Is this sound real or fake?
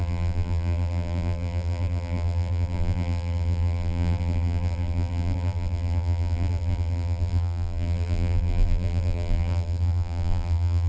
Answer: fake